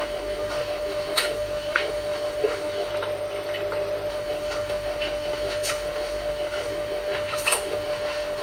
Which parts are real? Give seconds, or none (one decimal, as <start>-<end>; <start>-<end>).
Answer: 2.9-4.1